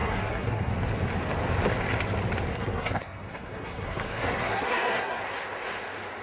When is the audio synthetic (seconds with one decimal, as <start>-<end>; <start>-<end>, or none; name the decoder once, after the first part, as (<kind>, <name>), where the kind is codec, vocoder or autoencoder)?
0.0-0.7 (codec, SNAC); 2.5-5.2